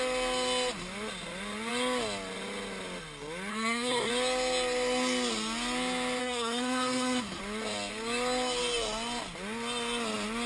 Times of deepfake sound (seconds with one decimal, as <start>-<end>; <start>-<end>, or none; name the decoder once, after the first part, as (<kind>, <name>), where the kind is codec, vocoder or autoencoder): 3.5-4.1 (codec, SNAC); 6.2-7.4